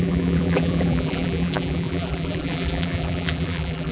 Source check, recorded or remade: remade